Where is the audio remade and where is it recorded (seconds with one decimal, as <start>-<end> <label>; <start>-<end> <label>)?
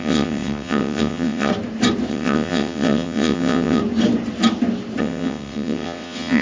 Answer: 0.0-1.5 remade; 1.5-2.1 recorded; 2.1-3.8 remade; 3.8-5.0 recorded; 5.0-6.4 remade